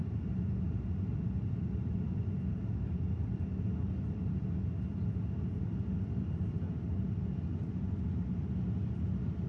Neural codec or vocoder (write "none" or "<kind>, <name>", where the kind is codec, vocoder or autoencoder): none